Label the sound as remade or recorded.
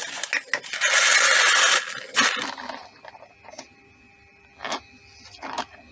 recorded